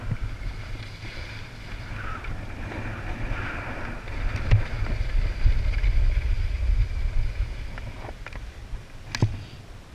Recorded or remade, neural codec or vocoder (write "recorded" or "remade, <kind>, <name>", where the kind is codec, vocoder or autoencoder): recorded